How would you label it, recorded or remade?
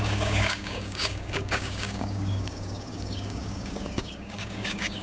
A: remade